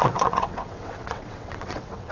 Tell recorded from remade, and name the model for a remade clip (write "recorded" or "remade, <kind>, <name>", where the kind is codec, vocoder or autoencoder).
remade, vocoder, WaveNeXt